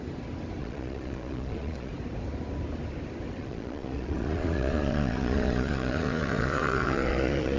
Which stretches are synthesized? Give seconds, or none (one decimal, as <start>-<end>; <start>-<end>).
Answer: 0.6-1.9; 3.4-7.6